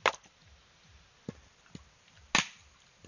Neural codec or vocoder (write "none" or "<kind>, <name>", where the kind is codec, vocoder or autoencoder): none